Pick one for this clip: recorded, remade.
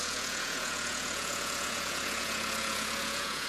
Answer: remade